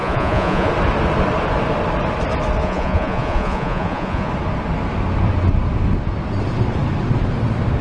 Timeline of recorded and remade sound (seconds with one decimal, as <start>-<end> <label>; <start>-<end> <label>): 0.0-0.7 remade; 0.7-2.6 recorded; 2.6-4.3 remade; 4.3-7.8 recorded